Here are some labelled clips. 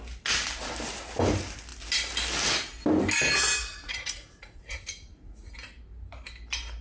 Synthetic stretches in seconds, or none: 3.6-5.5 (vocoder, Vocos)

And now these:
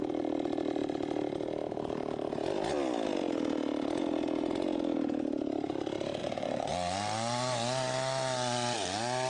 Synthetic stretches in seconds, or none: 6.2-6.7 (vocoder, Vocos)

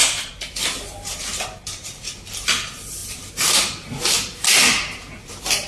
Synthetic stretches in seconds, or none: none

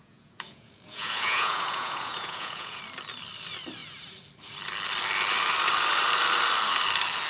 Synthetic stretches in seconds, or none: 0.0-2.8 (vocoder, Vocos)